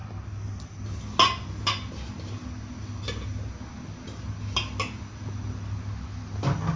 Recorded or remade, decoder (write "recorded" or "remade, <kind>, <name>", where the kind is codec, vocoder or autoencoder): recorded